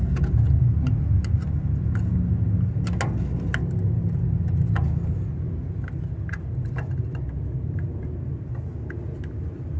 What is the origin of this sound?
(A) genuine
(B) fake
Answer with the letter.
A